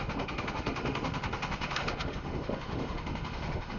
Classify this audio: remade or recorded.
remade